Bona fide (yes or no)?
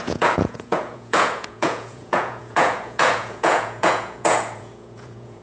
no